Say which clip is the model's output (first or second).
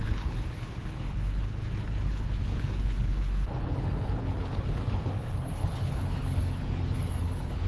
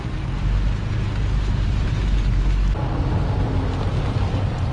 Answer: first